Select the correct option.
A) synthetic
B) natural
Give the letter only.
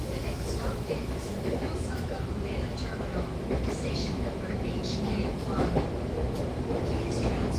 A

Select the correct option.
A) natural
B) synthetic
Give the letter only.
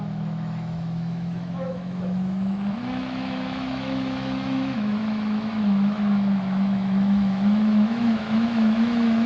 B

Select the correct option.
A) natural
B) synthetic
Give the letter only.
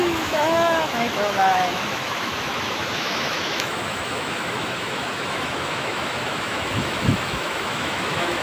B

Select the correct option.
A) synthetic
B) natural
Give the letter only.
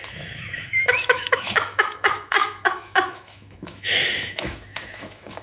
A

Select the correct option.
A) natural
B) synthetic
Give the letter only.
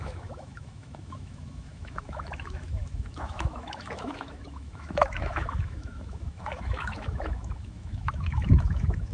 B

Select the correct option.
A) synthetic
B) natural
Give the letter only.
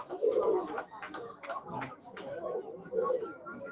A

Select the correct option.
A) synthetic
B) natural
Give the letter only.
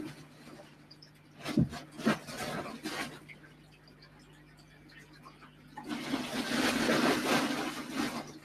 B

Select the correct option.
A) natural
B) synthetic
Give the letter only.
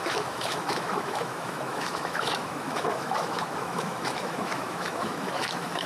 B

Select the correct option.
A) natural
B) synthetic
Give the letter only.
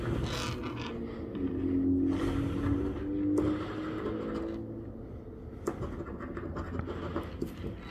A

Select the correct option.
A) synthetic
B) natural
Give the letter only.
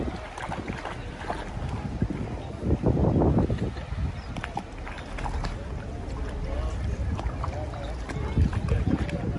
B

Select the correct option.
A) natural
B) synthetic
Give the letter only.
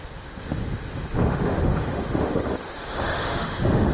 B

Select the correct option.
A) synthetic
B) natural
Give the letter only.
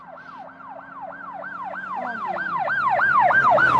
B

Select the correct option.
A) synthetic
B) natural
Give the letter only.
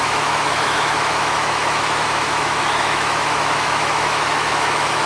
A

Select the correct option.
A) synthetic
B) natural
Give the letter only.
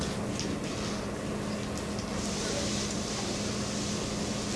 B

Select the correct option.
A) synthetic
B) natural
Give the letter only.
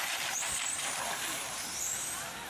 B